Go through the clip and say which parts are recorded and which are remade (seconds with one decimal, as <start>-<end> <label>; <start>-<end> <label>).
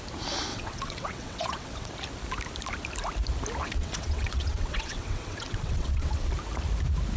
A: 0.0-0.5 recorded; 0.5-1.9 remade; 1.9-3.6 recorded; 3.6-6.3 remade; 6.3-7.2 recorded